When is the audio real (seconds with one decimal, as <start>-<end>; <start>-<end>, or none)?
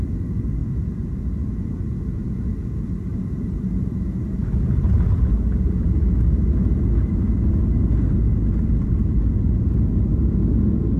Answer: 0.0-3.1; 5.5-11.0